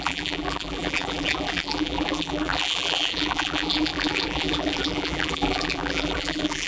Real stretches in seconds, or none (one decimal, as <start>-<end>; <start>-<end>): none